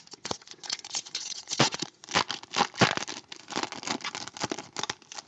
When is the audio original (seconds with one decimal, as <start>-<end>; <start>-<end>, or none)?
2.0-5.3